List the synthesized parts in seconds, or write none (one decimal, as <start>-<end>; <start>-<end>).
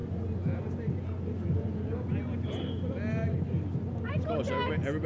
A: none